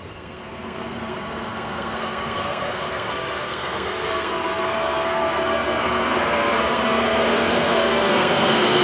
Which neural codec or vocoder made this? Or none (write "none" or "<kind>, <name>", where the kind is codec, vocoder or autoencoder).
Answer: codec, SNAC